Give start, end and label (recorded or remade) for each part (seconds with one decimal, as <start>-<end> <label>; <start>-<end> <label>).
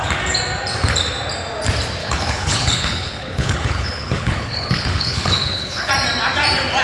0.0-2.0 recorded; 2.0-5.9 remade; 5.9-6.8 recorded